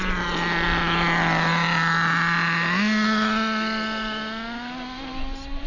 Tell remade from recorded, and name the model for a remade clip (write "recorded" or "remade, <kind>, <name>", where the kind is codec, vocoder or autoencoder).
recorded